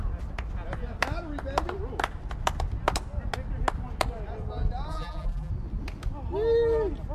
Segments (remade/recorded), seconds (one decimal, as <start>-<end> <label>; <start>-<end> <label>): 0.0-4.9 recorded; 4.9-5.5 remade; 5.5-7.1 recorded